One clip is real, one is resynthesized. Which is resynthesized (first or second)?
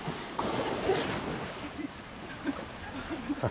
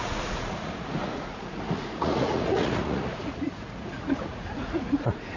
second